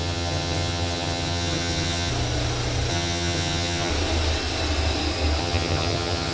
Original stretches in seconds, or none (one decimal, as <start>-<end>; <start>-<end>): 2.1-2.9; 3.9-5.4